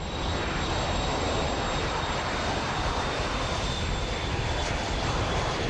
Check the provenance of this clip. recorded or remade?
recorded